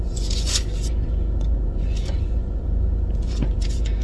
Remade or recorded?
remade